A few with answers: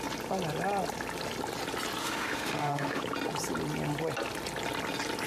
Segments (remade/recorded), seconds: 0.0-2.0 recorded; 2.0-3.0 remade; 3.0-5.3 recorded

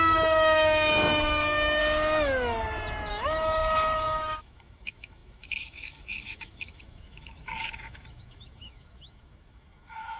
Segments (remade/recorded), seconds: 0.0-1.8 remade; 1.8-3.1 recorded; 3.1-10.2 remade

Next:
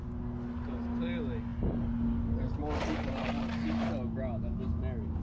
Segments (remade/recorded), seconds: 0.0-5.2 recorded